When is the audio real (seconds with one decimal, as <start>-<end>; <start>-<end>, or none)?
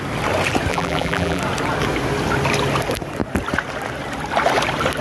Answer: 0.0-0.7; 1.4-5.0